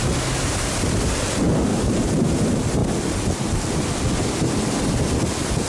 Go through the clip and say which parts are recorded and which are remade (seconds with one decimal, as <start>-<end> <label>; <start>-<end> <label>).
0.0-1.7 recorded; 1.7-2.3 remade; 2.3-5.7 recorded

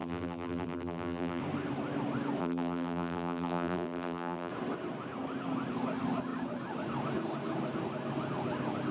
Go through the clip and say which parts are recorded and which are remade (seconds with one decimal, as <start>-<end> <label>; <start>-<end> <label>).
0.0-1.4 remade; 1.4-2.4 recorded; 2.4-4.5 remade; 4.5-8.9 recorded

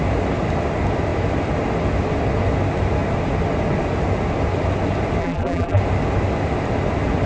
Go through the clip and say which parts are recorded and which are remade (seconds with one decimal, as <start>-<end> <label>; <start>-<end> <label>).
0.0-5.2 recorded; 5.2-5.8 remade; 5.8-7.3 recorded

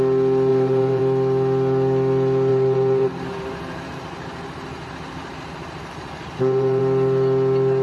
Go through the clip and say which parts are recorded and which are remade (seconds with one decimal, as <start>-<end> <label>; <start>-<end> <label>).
0.0-0.5 recorded; 0.5-1.0 remade; 1.0-2.5 recorded; 2.5-6.8 remade; 6.8-7.8 recorded